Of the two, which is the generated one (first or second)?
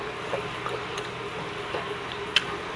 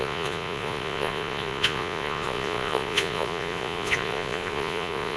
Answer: second